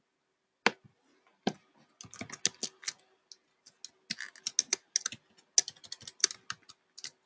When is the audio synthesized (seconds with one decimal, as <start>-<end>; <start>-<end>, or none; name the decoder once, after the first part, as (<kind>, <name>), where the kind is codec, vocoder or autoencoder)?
none